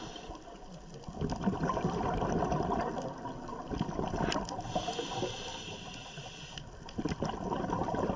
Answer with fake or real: real